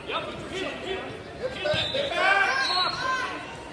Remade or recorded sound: recorded